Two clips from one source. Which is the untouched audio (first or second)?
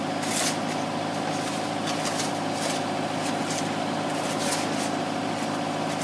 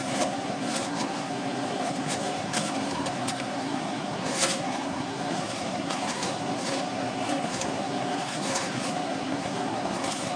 first